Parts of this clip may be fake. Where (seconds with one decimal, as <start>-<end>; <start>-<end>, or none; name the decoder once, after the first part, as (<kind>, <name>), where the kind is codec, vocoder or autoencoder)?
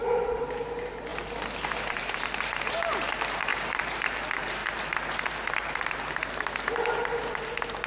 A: 0.0-1.1 (vocoder, BigVGAN v2); 1.9-4.6; 7.5-7.9